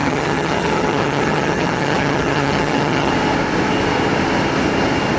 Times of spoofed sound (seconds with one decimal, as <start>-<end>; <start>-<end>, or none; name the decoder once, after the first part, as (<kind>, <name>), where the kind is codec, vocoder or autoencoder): 0.0-3.1 (vocoder, HiFi-GAN)